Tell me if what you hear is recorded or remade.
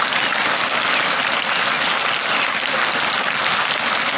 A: recorded